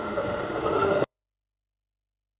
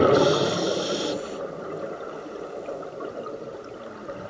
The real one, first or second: second